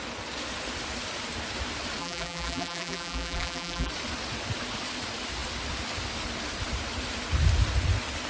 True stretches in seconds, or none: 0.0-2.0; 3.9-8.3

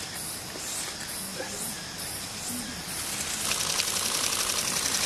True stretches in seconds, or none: 0.0-5.1

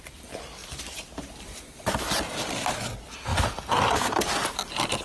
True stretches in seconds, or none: 0.0-5.0

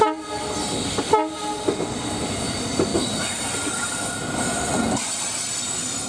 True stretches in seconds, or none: 0.0-6.1

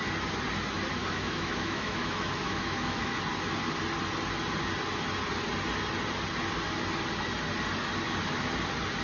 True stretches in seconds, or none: 0.0-1.0; 3.2-9.0

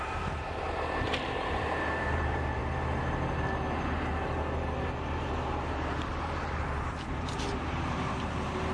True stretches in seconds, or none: 2.6-4.8

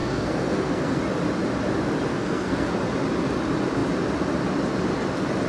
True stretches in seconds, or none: 1.0-2.1; 2.7-5.5